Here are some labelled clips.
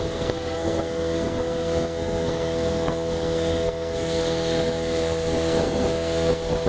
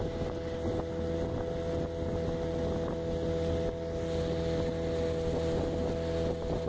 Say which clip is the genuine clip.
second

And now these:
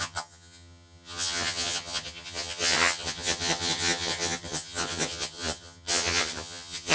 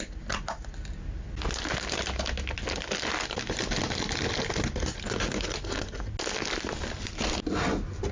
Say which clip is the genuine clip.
second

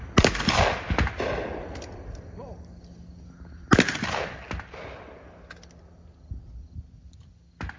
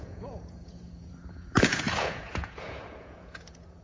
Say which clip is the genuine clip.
first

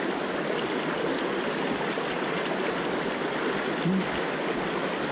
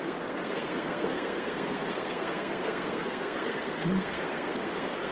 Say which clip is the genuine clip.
first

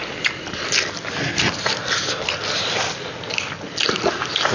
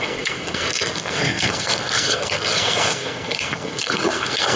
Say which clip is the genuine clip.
first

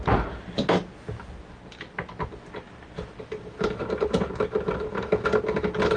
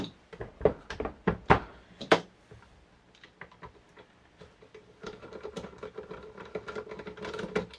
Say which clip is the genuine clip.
first